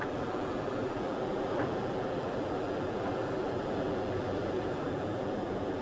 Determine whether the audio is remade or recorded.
remade